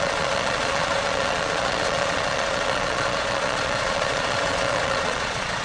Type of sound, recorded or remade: remade